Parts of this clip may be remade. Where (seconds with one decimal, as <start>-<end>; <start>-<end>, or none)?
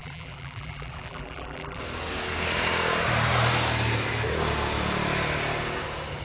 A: 0.0-1.8